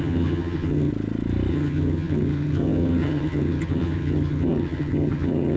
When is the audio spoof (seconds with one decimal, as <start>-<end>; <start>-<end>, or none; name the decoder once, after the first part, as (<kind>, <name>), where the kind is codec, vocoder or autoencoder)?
0.0-0.9 (vocoder, HiFi-GAN); 1.5-5.6